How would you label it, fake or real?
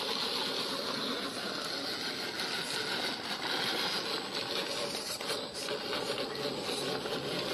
real